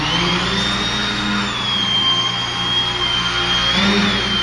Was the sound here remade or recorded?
recorded